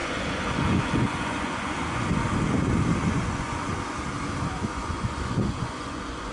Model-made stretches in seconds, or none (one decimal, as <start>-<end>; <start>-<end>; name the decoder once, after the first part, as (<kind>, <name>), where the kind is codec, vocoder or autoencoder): 0.0-2.2 (vocoder, Vocos); 3.1-3.7; 4.6-6.3